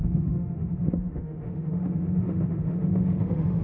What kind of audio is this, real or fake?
fake